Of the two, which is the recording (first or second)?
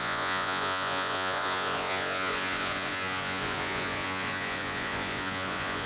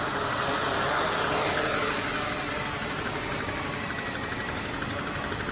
second